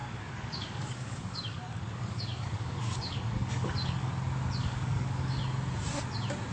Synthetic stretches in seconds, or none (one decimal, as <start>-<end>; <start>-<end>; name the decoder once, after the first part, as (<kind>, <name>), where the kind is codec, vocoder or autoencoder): 0.0-4.1 (codec, DAC); 4.6-5.4